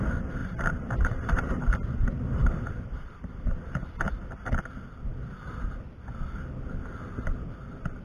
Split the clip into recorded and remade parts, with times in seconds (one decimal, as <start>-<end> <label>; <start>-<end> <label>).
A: 0.0-0.4 recorded; 0.4-3.7 remade; 3.7-8.0 recorded